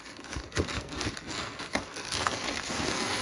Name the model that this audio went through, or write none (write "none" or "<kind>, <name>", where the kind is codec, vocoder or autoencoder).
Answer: codec, SNAC